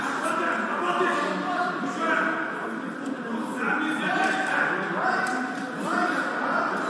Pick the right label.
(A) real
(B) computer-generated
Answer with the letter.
A